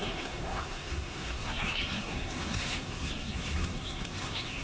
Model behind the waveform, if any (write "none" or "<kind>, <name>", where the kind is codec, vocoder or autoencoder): codec, SNAC